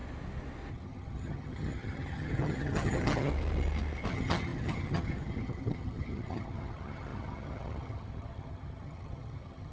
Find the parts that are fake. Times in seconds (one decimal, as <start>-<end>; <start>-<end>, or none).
0.7-3.3; 4.1-9.7